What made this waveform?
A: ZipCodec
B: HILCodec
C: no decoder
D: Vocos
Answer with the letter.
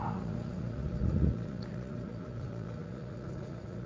D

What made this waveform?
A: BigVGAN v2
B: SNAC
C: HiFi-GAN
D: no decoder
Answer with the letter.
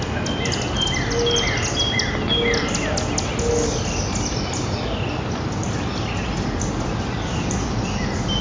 D